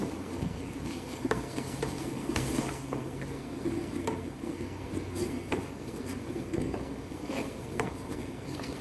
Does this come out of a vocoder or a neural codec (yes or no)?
yes